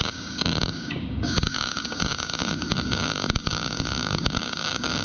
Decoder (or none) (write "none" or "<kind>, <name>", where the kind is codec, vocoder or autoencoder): codec, DAC